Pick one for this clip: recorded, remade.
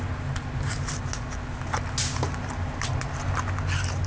recorded